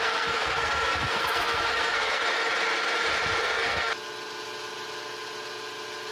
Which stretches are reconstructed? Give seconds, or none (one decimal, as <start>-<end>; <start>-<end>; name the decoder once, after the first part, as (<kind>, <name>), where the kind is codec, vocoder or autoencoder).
0.0-2.2 (codec, SNAC); 3.4-3.9